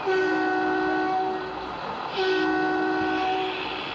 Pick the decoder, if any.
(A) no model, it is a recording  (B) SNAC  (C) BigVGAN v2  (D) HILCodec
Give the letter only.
A